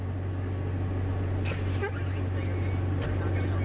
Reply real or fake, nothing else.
real